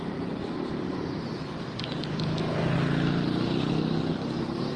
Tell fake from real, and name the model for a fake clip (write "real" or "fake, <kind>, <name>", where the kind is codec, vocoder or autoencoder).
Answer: real